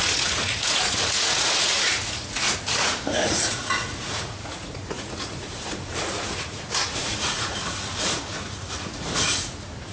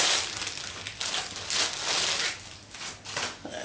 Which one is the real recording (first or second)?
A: second